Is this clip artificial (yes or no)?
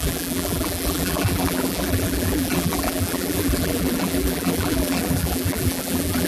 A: yes